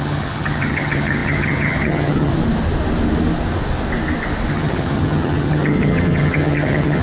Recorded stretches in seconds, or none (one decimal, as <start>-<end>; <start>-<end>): 2.3-4.5